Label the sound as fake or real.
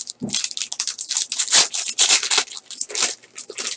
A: real